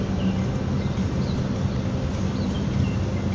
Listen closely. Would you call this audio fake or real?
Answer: real